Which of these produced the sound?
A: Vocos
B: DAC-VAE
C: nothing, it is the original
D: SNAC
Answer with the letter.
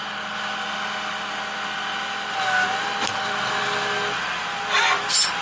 C